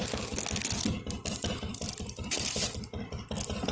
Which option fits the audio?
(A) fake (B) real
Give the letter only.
B